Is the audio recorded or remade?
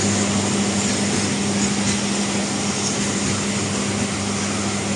recorded